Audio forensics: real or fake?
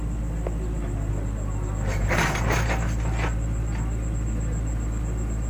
real